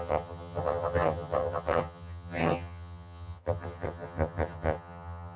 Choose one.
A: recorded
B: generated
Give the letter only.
B